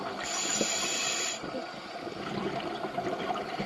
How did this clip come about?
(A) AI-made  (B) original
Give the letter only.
B